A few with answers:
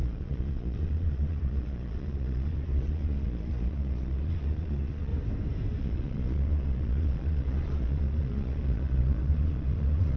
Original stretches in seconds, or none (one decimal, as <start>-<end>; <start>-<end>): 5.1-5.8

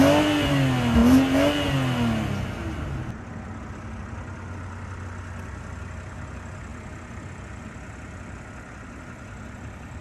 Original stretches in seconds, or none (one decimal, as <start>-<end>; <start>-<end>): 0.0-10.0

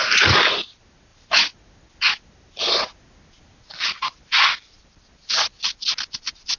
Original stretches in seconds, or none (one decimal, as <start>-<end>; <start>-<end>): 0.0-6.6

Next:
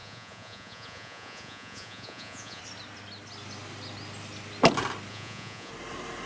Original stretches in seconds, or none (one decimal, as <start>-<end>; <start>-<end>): 2.6-5.1; 5.7-6.3

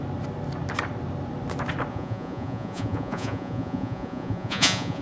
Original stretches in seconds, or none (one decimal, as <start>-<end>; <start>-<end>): 0.0-1.9

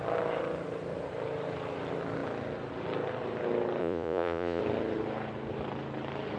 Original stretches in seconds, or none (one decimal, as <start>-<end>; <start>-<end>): 0.0-3.8; 4.6-6.4

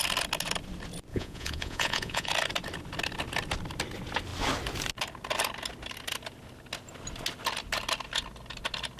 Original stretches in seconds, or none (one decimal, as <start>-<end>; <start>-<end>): 0.0-1.1; 2.3-9.0